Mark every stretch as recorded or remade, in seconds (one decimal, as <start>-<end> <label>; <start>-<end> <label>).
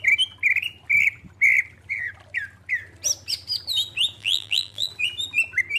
0.0-4.2 recorded; 4.2-4.9 remade; 4.9-5.8 recorded